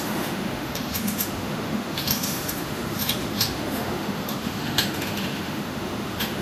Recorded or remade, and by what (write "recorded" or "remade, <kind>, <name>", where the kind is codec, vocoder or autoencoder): remade, autoencoder, DAC-VAE